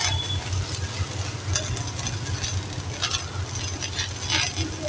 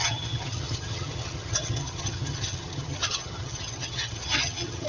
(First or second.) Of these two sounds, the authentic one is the first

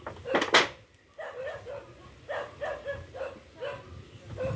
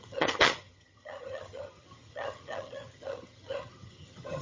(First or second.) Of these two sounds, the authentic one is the first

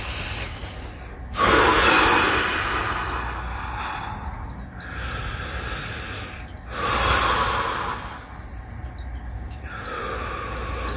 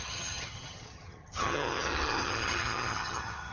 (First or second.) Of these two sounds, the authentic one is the first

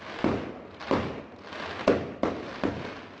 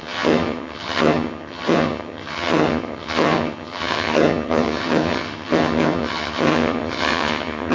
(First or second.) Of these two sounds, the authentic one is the first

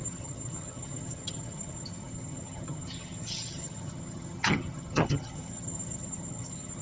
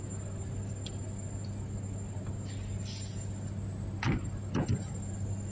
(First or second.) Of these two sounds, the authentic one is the second